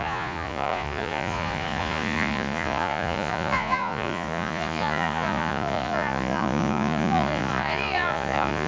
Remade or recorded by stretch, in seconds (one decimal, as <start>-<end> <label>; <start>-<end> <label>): 0.0-8.7 remade